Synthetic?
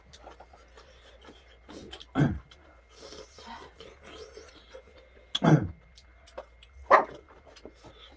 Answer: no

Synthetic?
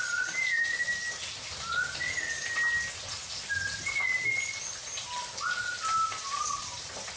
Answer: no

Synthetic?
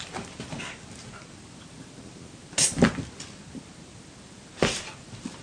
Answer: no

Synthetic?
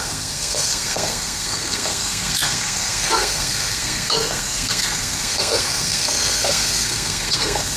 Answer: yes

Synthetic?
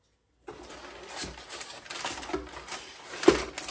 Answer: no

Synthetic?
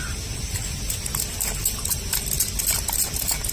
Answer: no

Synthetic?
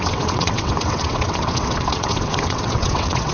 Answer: yes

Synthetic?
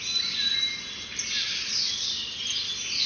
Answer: no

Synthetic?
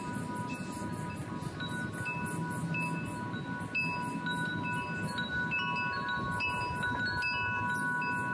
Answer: no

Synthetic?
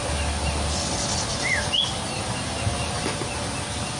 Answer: no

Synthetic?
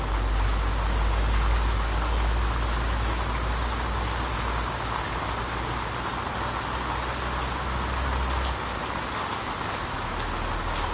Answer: no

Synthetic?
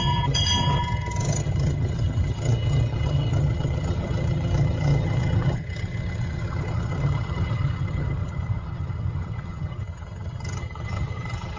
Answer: yes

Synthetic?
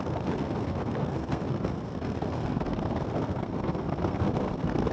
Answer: yes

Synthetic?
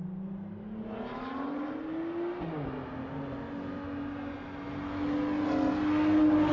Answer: no